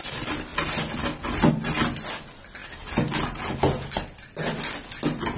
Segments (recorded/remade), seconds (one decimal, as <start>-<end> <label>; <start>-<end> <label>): 0.0-5.4 recorded